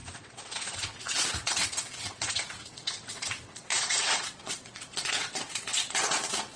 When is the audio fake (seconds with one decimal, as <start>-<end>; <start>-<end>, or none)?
0.0-6.6

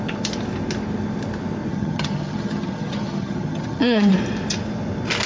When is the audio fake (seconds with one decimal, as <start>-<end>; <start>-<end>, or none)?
1.7-4.1

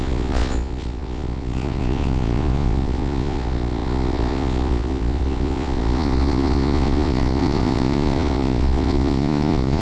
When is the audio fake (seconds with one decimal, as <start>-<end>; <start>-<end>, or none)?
0.0-9.8

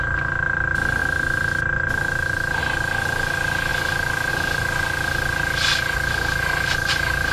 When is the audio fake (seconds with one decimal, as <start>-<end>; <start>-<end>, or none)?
none

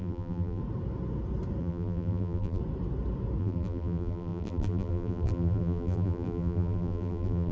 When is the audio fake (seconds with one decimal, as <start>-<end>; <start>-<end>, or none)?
0.0-0.6; 1.6-2.6; 3.4-7.5

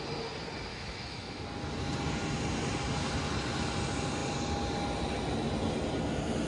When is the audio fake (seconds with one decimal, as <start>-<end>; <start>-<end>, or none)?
0.7-1.4

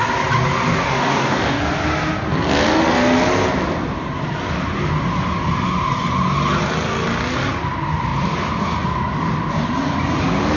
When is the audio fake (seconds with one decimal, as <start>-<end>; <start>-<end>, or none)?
0.7-1.6

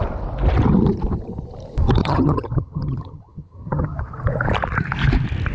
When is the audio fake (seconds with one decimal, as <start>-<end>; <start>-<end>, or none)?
2.0-4.0